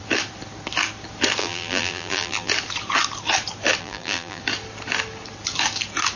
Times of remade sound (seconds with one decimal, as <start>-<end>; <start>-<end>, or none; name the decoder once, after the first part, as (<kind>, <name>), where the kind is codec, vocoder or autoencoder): 1.4-2.5 (vocoder, BigVGAN v2); 3.8-4.4